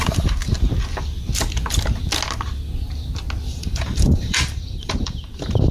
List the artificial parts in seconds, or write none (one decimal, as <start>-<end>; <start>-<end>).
0.0-0.4; 3.5-5.7